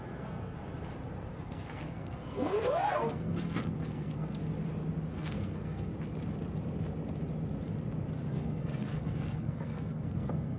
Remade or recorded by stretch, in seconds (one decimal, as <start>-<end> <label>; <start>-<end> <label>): 0.0-0.6 remade; 0.6-1.3 recorded; 1.3-4.4 remade; 4.4-5.1 recorded; 5.1-5.9 remade; 5.9-8.3 recorded; 8.3-10.6 remade